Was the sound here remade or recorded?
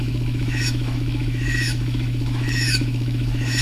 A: remade